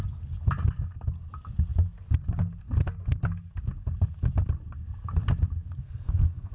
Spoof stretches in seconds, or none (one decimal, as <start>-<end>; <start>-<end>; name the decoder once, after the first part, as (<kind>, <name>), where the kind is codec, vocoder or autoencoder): 5.8-6.5 (codec, SNAC)